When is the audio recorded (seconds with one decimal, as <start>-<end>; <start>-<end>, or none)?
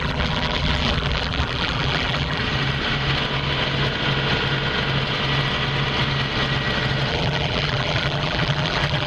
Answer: 2.4-7.1